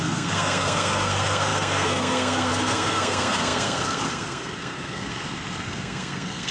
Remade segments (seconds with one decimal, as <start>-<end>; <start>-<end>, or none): 0.0-6.5